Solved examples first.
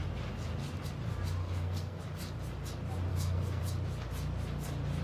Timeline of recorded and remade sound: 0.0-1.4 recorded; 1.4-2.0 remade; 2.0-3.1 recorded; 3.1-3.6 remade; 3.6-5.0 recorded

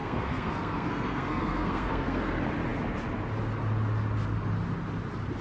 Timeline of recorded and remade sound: 0.0-2.2 remade; 2.2-5.4 recorded

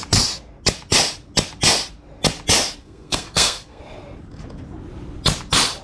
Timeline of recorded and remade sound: 0.0-2.8 recorded; 2.8-3.8 remade; 3.8-5.8 recorded

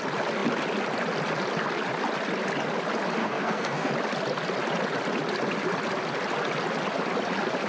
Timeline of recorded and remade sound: 0.0-3.2 recorded; 3.2-3.9 remade; 3.9-7.7 recorded

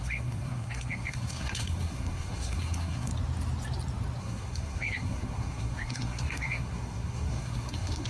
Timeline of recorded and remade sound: 0.0-3.1 remade; 3.1-4.2 recorded; 4.2-8.1 remade

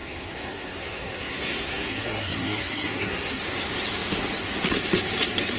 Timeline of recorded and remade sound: 0.0-3.4 remade; 3.4-5.6 recorded